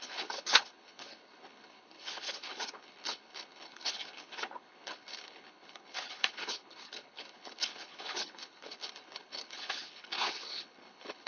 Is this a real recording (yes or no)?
no